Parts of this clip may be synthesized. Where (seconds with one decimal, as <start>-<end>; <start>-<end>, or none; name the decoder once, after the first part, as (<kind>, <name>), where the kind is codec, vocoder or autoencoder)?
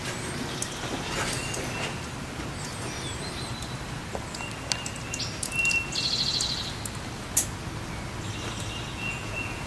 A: 8.9-9.7 (vocoder, Vocos)